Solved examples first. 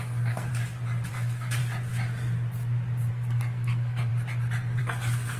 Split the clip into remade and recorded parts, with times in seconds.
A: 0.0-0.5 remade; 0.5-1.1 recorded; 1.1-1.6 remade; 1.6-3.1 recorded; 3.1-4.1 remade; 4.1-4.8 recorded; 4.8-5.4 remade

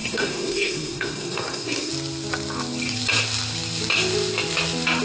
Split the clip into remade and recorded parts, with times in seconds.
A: 0.0-1.9 remade; 1.9-5.0 recorded